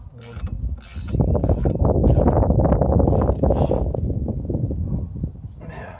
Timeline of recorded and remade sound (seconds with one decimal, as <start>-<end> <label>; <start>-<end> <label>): 0.0-6.0 recorded